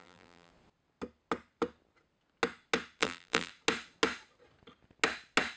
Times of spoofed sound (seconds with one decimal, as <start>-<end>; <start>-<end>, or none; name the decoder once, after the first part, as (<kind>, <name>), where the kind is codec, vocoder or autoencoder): 0.0-0.5 (vocoder, BigVGAN v2); 3.0-3.5